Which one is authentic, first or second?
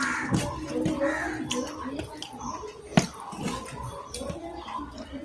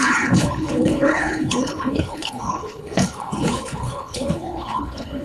first